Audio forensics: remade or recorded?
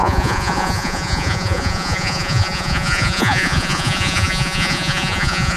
remade